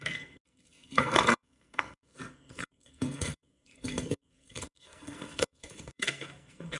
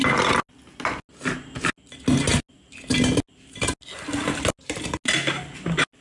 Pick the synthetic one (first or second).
first